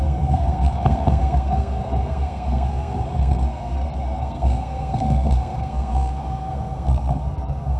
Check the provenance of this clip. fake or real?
fake